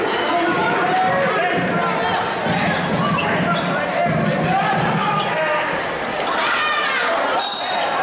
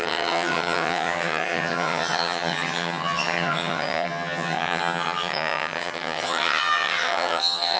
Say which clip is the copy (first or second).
second